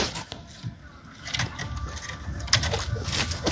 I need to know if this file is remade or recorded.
recorded